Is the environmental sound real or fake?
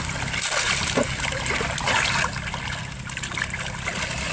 real